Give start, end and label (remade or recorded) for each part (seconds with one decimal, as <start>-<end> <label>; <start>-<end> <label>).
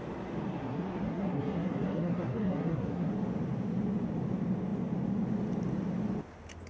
0.0-0.6 recorded; 0.6-3.1 remade; 3.1-6.7 recorded